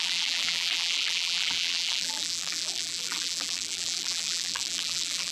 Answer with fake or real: fake